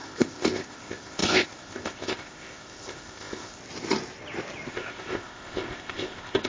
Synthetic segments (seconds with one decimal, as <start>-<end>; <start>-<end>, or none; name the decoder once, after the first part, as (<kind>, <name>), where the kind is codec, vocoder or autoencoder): 0.0-3.6 (codec, ZipCodec); 4.7-6.5